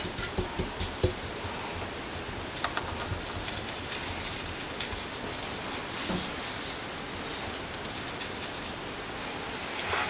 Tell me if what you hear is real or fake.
real